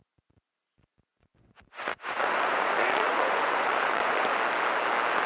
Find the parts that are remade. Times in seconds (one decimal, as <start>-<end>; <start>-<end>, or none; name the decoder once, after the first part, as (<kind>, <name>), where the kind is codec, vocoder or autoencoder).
1.1-4.3 (vocoder, Vocos)